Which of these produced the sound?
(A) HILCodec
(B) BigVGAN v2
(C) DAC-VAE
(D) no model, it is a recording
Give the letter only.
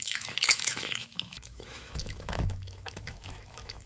C